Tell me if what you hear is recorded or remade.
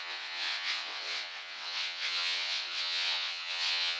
remade